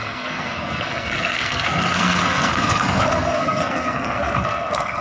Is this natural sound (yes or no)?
no